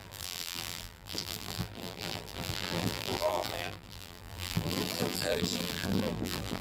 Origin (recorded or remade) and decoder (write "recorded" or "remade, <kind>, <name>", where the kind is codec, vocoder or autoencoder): remade, vocoder, BigVGAN v2